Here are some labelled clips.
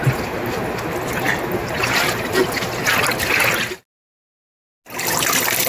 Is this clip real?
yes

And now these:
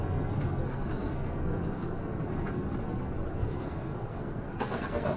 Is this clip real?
no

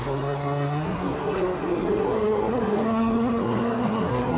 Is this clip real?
no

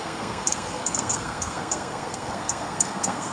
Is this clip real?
no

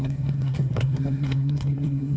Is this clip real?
no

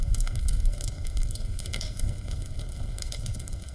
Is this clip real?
no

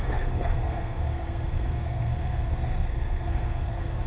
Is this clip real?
no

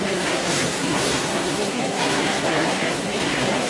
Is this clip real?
no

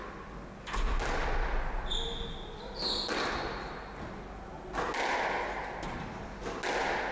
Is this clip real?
yes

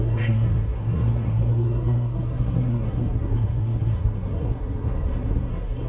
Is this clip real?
no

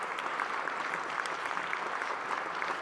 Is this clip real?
yes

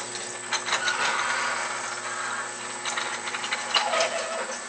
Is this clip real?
yes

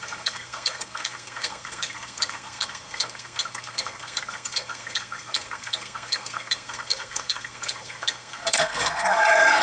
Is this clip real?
no